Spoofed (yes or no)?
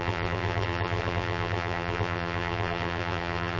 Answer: yes